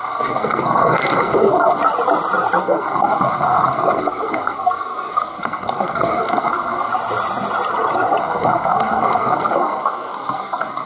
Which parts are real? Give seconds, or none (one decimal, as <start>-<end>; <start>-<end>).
1.8-2.6; 6.9-8.2